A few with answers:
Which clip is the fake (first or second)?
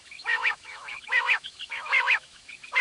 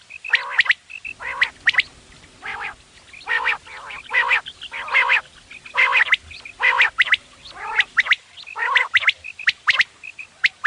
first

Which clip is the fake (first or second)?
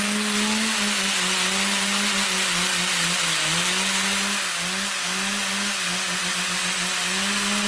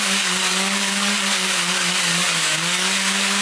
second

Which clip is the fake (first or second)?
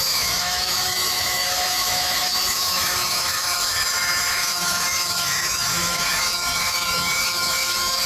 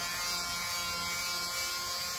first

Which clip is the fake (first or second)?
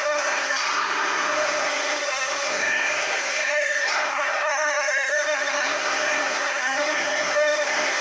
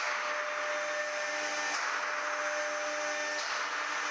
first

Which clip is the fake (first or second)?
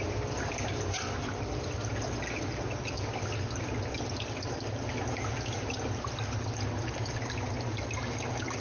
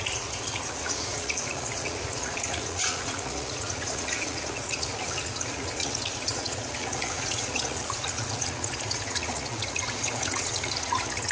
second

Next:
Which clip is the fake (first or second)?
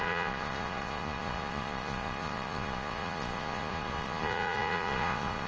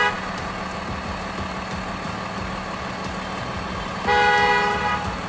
first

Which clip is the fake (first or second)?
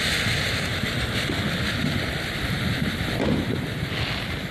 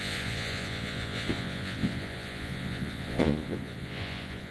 second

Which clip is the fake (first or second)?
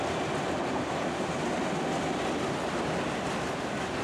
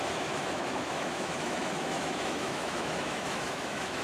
second